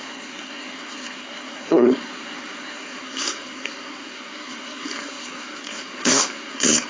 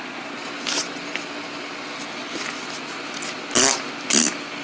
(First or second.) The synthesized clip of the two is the first